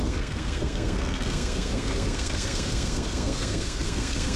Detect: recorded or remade remade